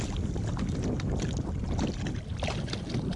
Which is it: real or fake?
real